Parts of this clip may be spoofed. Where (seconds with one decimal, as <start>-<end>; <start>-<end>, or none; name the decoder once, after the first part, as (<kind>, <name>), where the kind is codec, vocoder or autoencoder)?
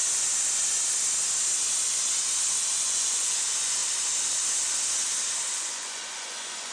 2.8-3.8 (vocoder, Vocos); 5.5-6.7